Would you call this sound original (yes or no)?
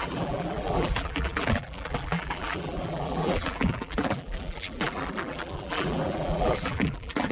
no